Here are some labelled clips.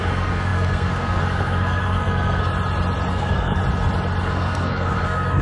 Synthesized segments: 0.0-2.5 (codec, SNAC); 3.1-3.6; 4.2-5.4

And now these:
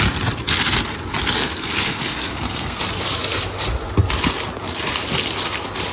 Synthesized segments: 1.4-2.8 (codec, SNAC)

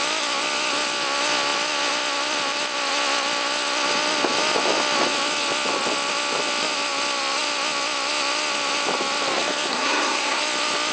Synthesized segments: 9.7-10.4 (codec, SNAC)

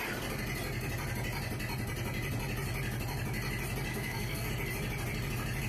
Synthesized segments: 3.9-4.5 (codec, SNAC)

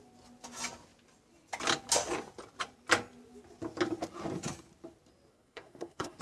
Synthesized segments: 5.3-6.2 (codec, SNAC)

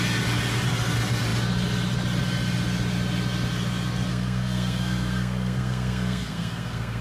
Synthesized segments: 4.1-7.0 (codec, SNAC)

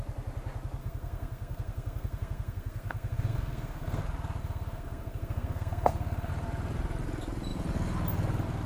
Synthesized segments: 0.8-4.0 (codec, SNAC); 4.4-6.3

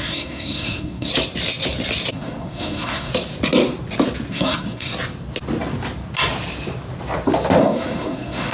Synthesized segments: 0.0-1.1 (codec, SNAC); 2.1-3.1; 4.3-4.9; 7.6-8.5